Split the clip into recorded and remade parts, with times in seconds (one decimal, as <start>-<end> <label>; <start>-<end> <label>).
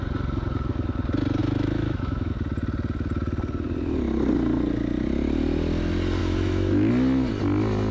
0.0-1.4 recorded; 1.4-2.3 remade; 2.3-6.2 recorded; 6.2-6.9 remade; 6.9-7.9 recorded